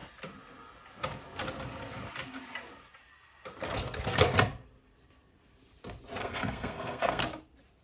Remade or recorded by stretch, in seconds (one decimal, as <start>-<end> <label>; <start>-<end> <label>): 0.0-6.2 recorded; 6.2-7.2 remade; 7.2-7.8 recorded